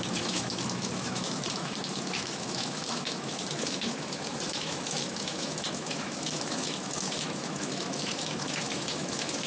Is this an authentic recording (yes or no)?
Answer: no